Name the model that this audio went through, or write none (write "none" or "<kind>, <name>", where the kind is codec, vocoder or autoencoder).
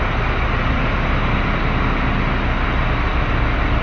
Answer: none